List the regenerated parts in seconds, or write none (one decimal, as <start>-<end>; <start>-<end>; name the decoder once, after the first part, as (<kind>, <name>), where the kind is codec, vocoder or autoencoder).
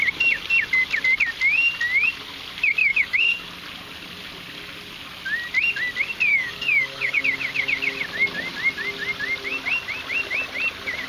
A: 2.8-3.4 (codec, DAC); 6.3-7.2